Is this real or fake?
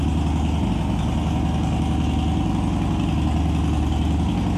real